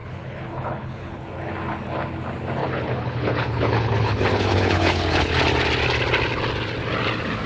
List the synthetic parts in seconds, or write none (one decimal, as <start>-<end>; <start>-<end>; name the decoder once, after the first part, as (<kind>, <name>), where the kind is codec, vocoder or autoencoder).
0.0-1.2 (codec, HILCodec); 2.6-5.5